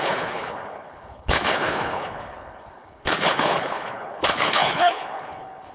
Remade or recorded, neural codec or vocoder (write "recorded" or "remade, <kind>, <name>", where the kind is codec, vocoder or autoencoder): remade, codec, HILCodec